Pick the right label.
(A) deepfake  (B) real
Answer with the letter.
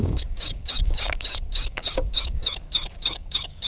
A